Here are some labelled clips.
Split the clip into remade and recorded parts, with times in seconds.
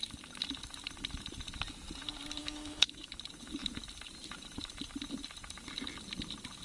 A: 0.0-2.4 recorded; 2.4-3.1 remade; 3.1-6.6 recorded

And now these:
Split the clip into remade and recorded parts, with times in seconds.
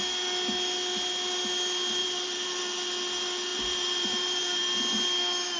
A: 0.0-2.0 recorded; 2.0-2.6 remade; 2.6-3.5 recorded; 3.5-4.6 remade; 4.6-5.6 recorded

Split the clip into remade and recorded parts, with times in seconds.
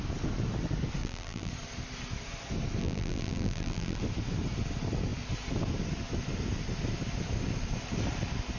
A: 0.0-1.0 recorded; 1.0-1.5 remade; 1.5-2.8 recorded; 2.8-4.0 remade; 4.0-8.6 recorded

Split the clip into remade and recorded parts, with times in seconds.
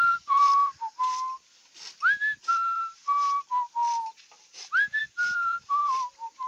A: 0.0-1.6 remade; 1.6-2.5 recorded; 2.5-6.5 remade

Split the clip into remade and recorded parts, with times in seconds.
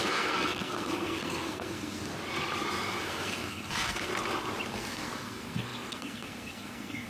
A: 0.0-2.1 remade; 2.1-3.0 recorded; 3.0-4.1 remade; 4.1-4.7 recorded; 4.7-7.1 remade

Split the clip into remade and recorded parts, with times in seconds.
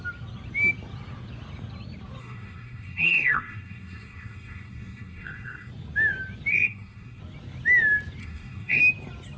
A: 0.0-2.2 recorded; 2.2-5.7 remade; 5.7-6.5 recorded; 6.5-7.2 remade; 7.2-8.2 recorded; 8.2-8.8 remade; 8.8-9.4 recorded